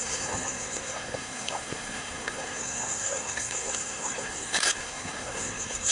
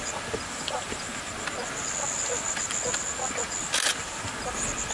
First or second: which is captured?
second